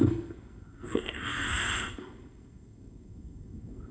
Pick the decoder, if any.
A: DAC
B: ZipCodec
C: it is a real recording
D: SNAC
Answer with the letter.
D